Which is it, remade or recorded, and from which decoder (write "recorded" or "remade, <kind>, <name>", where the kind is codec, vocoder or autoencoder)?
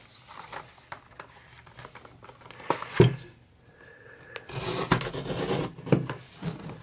recorded